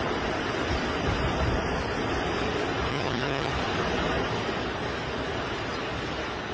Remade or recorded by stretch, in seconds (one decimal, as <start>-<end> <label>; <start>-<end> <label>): 0.0-2.9 recorded; 2.9-3.5 remade; 3.5-6.5 recorded